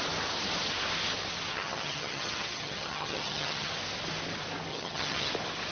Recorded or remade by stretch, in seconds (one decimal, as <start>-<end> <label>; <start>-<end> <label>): 0.0-1.5 recorded; 1.5-3.7 remade; 3.7-4.7 recorded; 4.7-5.3 remade; 5.3-5.7 recorded